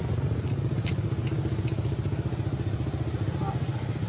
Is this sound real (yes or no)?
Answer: yes